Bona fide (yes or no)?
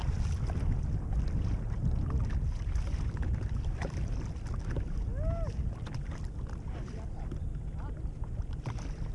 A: yes